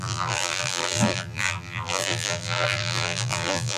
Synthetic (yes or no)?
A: yes